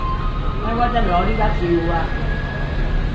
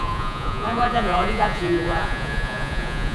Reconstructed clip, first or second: second